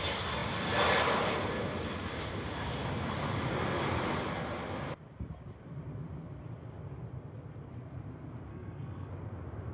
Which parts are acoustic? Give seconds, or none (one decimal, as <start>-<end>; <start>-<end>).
0.0-8.5; 9.1-9.7